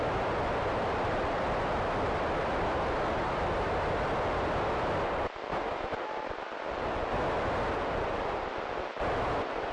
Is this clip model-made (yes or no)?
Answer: no